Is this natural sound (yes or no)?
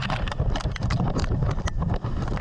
yes